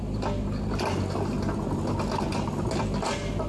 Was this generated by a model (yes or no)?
no